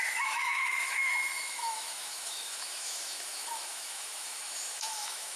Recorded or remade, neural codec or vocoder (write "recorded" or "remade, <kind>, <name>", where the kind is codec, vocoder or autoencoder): remade, autoencoder, DAC-VAE